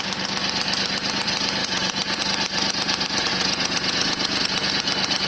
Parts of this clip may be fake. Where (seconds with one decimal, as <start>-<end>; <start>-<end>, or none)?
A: 1.6-2.2; 3.3-4.7